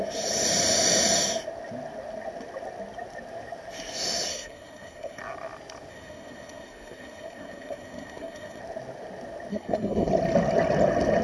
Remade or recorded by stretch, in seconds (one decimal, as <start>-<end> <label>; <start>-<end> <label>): 0.0-4.3 recorded; 4.3-5.2 remade; 5.2-5.9 recorded; 5.9-8.6 remade; 8.6-9.5 recorded; 9.5-10.1 remade; 10.1-11.2 recorded